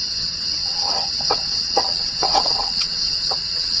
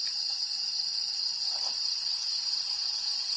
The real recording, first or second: second